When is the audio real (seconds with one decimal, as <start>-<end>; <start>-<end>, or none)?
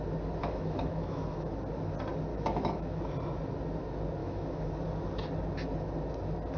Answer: 0.0-0.4; 1.5-2.3; 3.0-4.2; 4.7-6.6